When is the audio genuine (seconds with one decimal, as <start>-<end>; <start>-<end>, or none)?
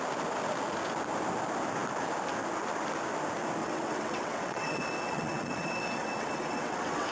0.0-3.6